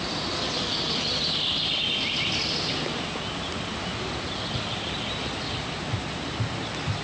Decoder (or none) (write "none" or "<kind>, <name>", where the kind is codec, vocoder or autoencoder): none